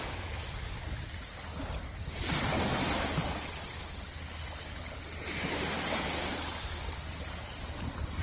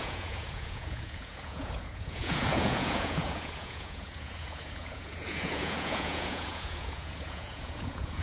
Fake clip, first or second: second